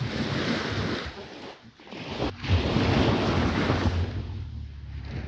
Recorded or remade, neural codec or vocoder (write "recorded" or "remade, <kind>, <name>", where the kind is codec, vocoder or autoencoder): recorded